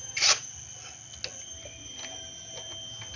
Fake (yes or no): no